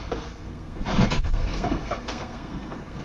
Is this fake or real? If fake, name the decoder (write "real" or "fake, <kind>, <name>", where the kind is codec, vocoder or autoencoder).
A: fake, codec, SNAC